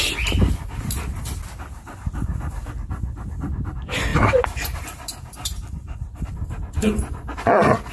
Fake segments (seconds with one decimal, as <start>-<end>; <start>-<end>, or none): 4.1-6.3